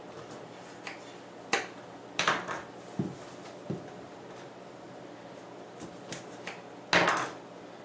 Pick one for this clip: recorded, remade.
recorded